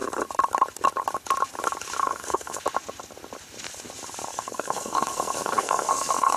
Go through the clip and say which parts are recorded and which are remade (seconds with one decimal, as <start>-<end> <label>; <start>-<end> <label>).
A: 0.0-2.0 recorded; 2.0-2.6 remade; 2.6-4.3 recorded; 4.3-6.4 remade